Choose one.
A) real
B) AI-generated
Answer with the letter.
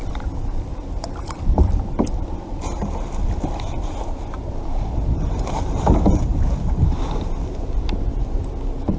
A